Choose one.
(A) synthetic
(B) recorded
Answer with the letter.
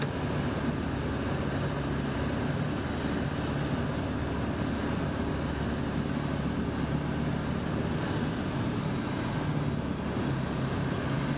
B